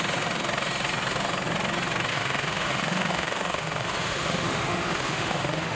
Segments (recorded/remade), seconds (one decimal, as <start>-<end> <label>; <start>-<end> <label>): 0.0-2.1 recorded; 2.1-5.8 remade